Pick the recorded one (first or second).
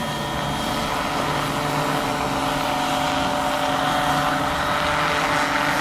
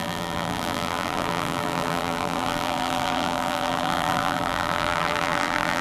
first